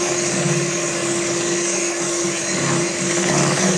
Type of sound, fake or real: fake